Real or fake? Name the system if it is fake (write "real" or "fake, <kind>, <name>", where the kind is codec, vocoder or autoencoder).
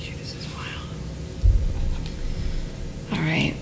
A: real